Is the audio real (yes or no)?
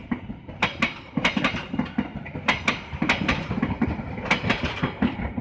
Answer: yes